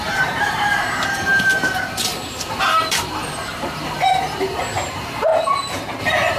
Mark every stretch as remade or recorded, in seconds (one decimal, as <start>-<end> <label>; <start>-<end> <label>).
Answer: 0.0-5.3 remade; 5.3-6.0 recorded; 6.0-6.4 remade